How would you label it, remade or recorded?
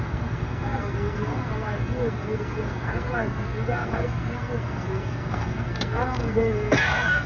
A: remade